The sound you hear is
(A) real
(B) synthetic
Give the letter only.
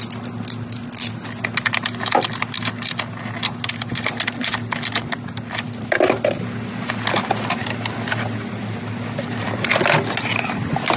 A